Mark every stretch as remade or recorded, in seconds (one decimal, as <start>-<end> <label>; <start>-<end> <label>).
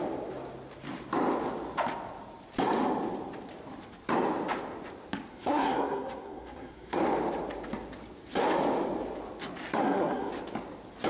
0.0-5.3 recorded; 5.3-7.0 remade; 7.0-9.8 recorded; 9.8-10.3 remade; 10.3-11.1 recorded